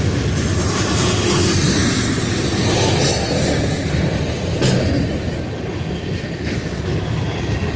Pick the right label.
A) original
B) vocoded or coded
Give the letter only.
A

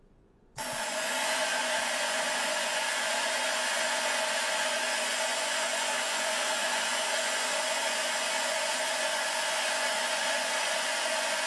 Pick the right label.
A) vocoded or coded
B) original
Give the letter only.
A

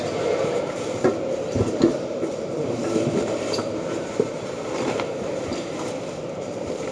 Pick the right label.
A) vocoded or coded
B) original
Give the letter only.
A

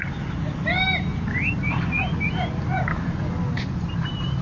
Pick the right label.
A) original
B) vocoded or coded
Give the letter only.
A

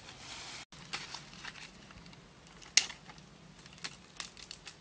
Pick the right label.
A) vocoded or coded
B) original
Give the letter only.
B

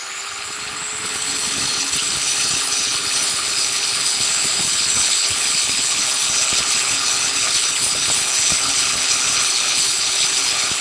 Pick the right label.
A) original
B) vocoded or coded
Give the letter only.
B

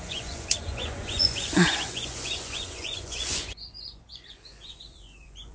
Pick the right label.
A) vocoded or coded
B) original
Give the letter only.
A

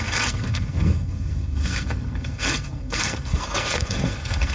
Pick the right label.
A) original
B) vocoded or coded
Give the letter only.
B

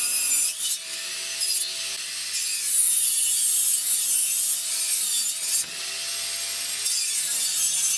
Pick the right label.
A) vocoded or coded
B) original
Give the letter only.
B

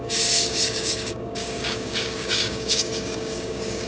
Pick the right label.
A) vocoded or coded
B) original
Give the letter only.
A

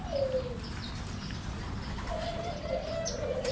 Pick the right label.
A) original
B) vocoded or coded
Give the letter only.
A